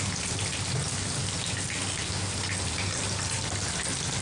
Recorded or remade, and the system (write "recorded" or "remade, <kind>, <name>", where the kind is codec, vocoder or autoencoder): recorded